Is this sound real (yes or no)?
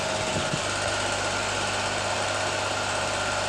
yes